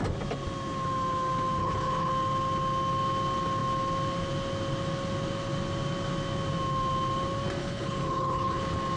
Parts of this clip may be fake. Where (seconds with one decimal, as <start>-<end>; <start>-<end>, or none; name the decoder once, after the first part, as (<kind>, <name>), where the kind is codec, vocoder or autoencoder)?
1.6-2.1 (codec, HILCodec); 7.6-8.6